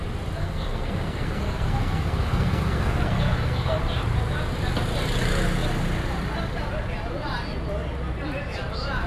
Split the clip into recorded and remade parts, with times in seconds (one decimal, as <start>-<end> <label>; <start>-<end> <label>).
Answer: 0.0-0.4 recorded; 0.4-3.8 remade; 3.8-9.1 recorded